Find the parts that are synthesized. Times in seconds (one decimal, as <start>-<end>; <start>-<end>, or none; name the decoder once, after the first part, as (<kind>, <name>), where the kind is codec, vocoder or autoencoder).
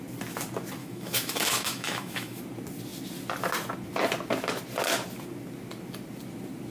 0.8-2.4 (autoencoder, DAC-VAE)